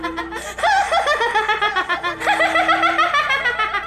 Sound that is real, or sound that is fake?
real